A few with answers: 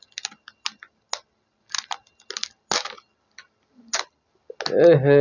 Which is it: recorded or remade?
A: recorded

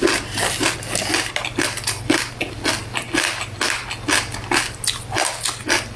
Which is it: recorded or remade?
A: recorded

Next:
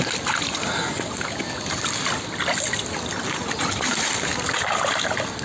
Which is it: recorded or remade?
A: recorded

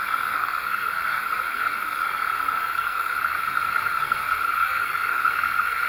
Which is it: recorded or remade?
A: remade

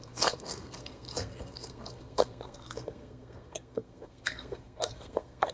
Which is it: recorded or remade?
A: remade